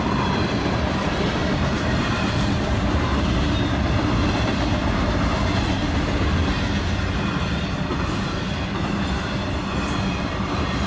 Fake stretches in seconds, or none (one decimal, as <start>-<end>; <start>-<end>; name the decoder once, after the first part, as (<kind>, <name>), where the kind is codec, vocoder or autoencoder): 1.4-5.3 (vocoder, BigVGAN v2)